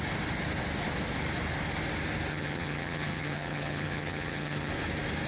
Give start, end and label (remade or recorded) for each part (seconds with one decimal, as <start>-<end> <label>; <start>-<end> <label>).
0.0-2.3 recorded; 2.3-4.7 remade; 4.7-5.3 recorded